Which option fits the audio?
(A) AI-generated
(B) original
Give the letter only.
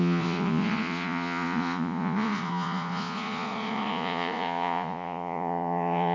A